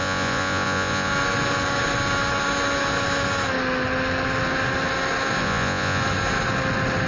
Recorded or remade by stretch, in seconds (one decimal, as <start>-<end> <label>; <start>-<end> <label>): 0.0-1.1 remade; 1.1-5.4 recorded; 5.4-6.0 remade; 6.0-7.1 recorded